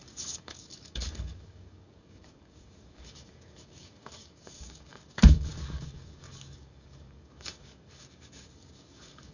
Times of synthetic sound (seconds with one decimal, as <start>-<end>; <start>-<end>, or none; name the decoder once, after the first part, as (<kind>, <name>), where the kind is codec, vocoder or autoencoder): 0.0-9.3 (codec, DAC)